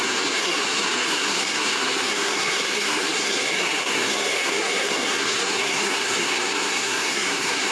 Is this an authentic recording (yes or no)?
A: no